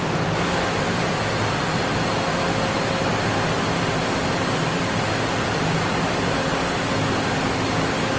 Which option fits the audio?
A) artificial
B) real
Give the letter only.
B